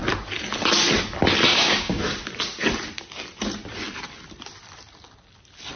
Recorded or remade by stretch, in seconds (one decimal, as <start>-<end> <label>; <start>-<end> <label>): 0.0-1.5 recorded; 1.5-2.0 remade; 2.0-5.8 recorded